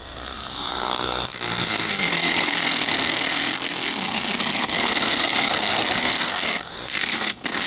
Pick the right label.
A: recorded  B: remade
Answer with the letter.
B